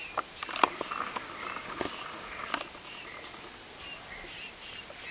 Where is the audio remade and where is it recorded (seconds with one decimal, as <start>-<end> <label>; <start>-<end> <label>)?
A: 0.0-5.1 recorded